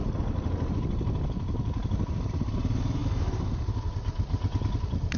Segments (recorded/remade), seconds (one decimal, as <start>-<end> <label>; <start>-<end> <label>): 0.0-5.2 recorded